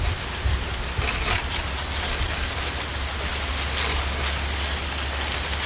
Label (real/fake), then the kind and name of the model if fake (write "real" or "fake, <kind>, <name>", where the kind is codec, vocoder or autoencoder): real